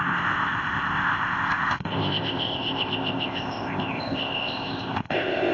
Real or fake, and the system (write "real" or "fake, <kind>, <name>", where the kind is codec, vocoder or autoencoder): fake, codec, ZipCodec